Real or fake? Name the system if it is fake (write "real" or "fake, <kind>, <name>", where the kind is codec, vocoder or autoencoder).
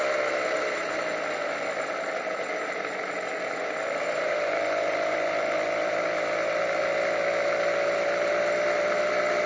real